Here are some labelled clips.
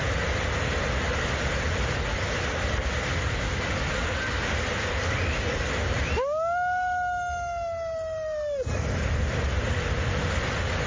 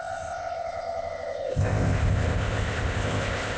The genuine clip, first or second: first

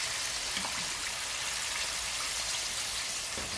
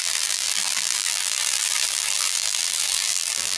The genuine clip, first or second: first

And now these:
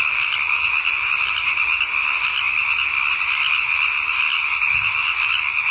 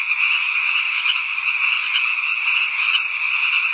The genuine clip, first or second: first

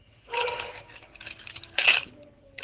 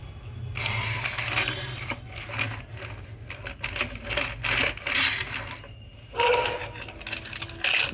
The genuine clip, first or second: second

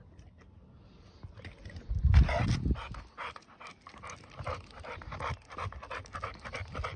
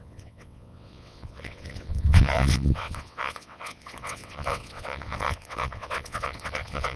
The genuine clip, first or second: first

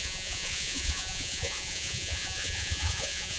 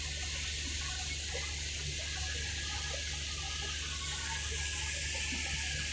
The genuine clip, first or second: second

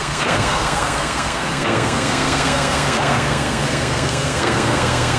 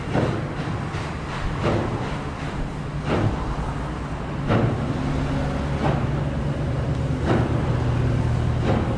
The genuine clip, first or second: second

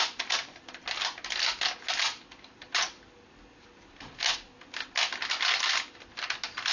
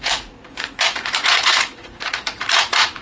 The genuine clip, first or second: first